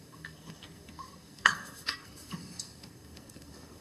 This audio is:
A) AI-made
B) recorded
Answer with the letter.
A